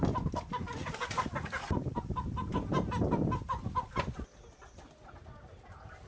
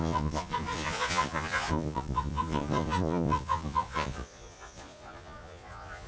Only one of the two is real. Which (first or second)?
first